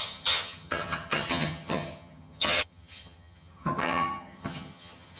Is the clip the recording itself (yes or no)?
no